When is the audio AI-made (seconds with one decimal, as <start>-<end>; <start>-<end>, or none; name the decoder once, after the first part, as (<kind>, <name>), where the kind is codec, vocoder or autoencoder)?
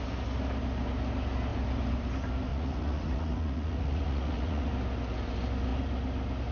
2.5-4.7 (vocoder, Vocos)